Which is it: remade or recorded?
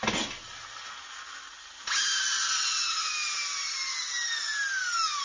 recorded